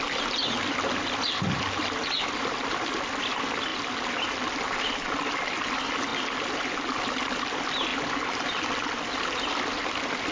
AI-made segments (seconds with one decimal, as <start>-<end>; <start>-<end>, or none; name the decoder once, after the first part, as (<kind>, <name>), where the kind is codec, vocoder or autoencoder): none